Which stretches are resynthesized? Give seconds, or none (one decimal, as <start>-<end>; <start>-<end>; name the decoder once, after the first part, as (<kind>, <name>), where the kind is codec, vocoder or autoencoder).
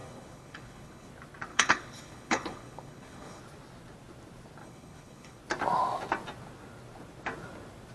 0.0-1.1 (codec, HILCodec); 1.5-3.4; 4.6-5.4